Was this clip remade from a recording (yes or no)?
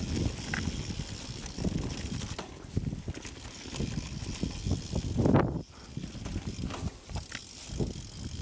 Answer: no